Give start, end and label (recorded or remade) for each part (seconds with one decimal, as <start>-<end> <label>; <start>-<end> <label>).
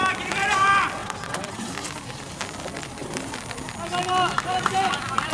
0.0-1.0 recorded; 1.0-1.7 remade; 1.7-5.3 recorded